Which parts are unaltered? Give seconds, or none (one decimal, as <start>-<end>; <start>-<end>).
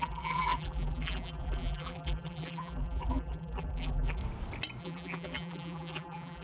4.2-4.8